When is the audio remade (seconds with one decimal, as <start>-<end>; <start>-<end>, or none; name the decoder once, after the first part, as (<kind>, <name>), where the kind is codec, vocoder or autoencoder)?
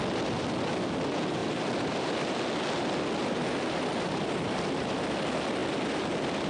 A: 1.4-2.3 (vocoder, BigVGAN v2); 3.2-5.0; 5.6-6.5